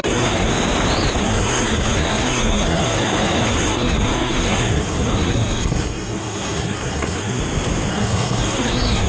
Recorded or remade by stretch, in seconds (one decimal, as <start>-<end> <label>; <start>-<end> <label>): 0.0-0.5 remade; 0.5-1.2 recorded; 1.2-7.4 remade; 7.4-7.9 recorded; 7.9-9.1 remade